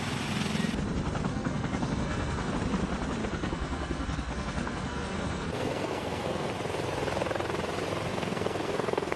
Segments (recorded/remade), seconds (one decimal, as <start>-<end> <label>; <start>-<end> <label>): 0.0-1.3 recorded; 1.3-2.5 remade; 2.5-3.2 recorded; 3.2-6.5 remade; 6.5-8.1 recorded; 8.1-9.2 remade